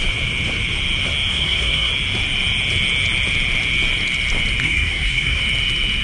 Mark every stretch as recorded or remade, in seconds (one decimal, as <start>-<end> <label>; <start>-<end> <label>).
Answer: 0.0-1.3 recorded; 1.3-1.9 remade; 1.9-4.6 recorded; 4.6-5.4 remade; 5.4-6.0 recorded